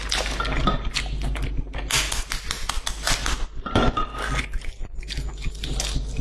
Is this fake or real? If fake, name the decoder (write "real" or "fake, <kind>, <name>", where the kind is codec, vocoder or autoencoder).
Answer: real